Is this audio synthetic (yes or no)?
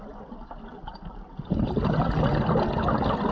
no